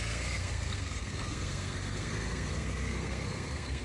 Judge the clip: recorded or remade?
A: remade